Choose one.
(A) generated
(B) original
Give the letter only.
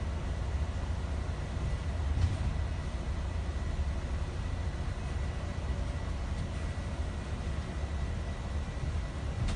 B